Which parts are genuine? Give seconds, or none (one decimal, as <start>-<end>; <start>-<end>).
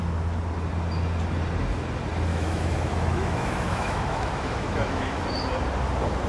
0.0-2.3; 5.2-6.3